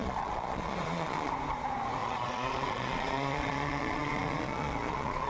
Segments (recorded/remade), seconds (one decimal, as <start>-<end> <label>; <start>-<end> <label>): 0.0-1.3 remade; 1.3-2.0 recorded; 2.0-5.3 remade